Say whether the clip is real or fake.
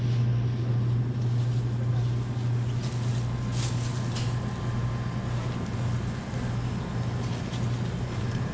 real